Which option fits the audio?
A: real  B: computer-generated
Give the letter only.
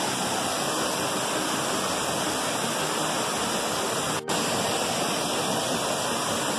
B